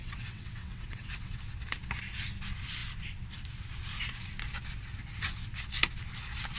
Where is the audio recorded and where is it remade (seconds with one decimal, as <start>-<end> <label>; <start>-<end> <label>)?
0.0-1.4 remade; 1.4-6.6 recorded